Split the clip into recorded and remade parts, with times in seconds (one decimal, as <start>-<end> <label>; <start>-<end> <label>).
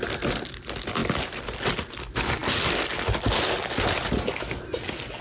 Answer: 0.0-2.4 remade; 2.4-3.2 recorded; 3.2-5.2 remade